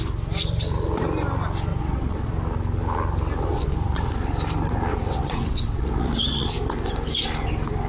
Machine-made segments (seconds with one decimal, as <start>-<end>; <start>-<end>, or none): 1.7-2.3; 3.5-4.1; 4.9-6.5